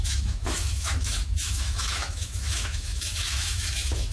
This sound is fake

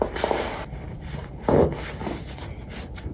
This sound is real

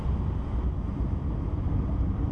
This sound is real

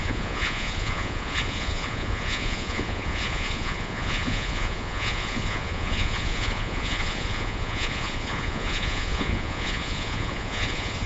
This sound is fake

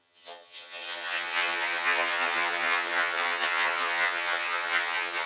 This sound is fake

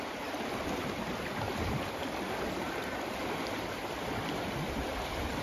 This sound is fake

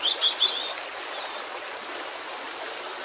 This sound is real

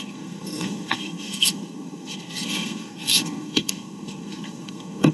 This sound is fake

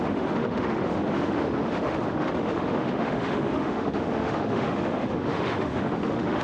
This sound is fake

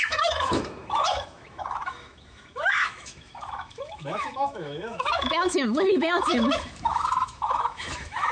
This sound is fake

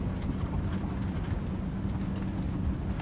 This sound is real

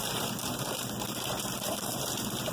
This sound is fake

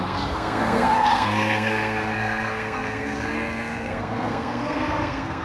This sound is fake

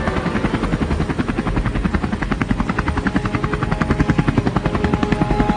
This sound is real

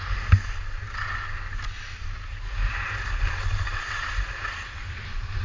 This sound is real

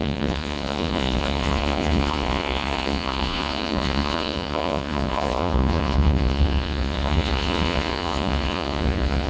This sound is fake